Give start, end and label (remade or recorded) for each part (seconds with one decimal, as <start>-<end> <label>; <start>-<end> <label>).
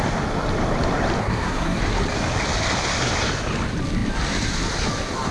0.0-1.2 recorded; 1.2-1.8 remade; 1.8-5.3 recorded